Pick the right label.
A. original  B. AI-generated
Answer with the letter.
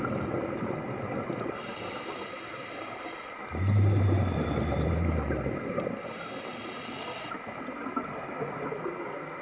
A